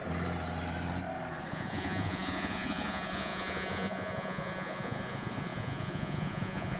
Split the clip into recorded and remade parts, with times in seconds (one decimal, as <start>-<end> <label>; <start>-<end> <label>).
0.0-1.5 recorded; 1.5-6.8 remade